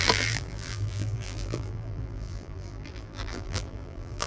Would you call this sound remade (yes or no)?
yes